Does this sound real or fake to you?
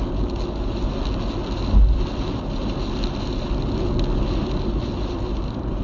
real